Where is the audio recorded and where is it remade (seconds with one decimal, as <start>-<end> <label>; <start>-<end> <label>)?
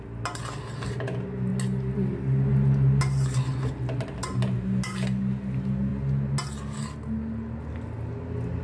0.0-8.6 recorded